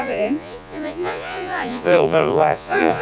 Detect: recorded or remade remade